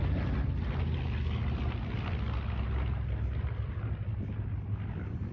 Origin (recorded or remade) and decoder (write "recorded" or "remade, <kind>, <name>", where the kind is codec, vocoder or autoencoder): recorded